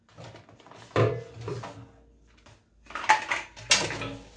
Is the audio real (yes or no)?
yes